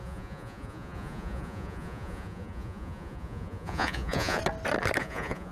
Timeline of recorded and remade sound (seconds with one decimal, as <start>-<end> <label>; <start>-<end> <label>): 0.0-4.4 remade; 4.4-5.0 recorded; 5.0-5.5 remade